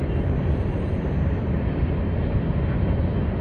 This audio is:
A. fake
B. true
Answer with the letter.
B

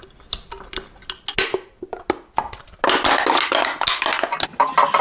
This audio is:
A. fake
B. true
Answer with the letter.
B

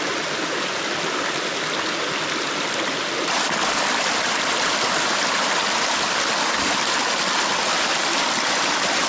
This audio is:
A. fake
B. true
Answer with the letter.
B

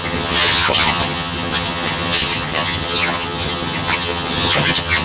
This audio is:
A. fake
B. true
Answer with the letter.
A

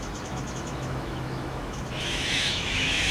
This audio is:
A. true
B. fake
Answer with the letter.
B